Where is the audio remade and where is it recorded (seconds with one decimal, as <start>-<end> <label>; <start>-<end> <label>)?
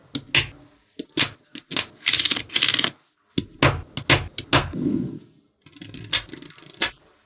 0.0-4.6 recorded; 4.6-5.2 remade; 5.2-7.3 recorded